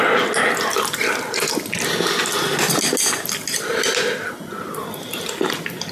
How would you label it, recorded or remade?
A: recorded